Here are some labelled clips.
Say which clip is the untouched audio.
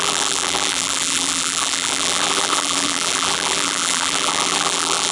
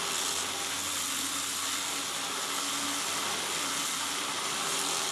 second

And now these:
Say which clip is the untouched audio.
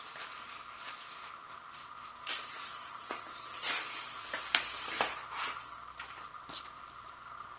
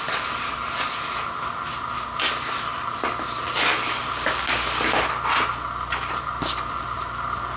second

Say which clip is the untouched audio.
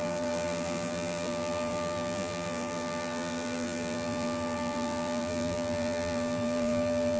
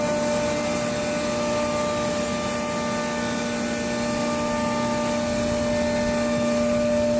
second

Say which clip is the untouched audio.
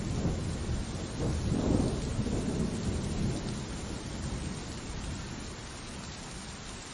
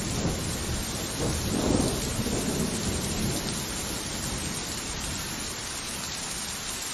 first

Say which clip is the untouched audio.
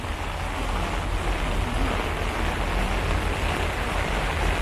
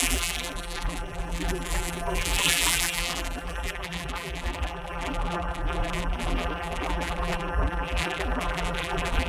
first